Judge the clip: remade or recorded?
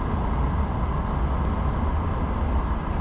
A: recorded